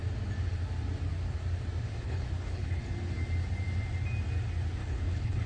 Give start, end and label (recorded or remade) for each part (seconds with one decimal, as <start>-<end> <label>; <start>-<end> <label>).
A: 0.0-1.9 recorded; 1.9-2.8 remade; 2.8-4.8 recorded; 4.8-5.5 remade